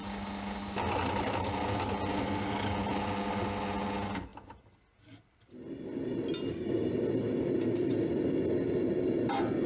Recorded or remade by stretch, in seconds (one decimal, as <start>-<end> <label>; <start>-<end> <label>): 0.0-9.7 recorded